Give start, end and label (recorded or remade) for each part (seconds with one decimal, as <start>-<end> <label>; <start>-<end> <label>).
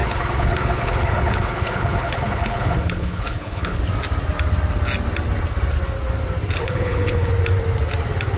0.0-3.8 remade; 3.8-6.6 recorded; 6.6-7.3 remade; 7.3-8.4 recorded